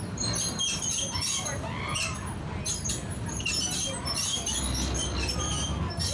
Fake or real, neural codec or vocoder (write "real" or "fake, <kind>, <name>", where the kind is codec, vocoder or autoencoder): real